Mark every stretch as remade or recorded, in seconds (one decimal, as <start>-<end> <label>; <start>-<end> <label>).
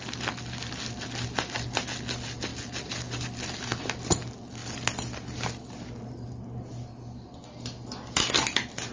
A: 0.0-8.9 recorded